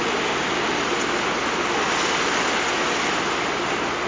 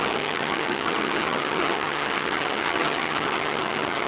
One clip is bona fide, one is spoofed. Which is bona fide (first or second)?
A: first